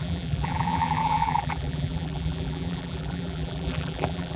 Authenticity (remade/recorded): remade